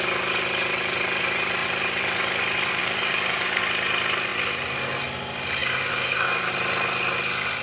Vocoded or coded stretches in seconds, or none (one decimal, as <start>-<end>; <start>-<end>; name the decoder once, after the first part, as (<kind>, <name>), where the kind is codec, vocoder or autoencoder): 2.8-3.6 (codec, DAC); 5.6-6.5